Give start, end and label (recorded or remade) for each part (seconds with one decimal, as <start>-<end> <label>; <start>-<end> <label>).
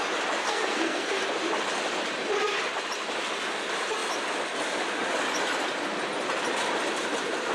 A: 0.0-0.4 recorded; 0.4-1.2 remade; 1.2-7.5 recorded